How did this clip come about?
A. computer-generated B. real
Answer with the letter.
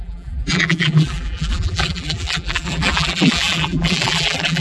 A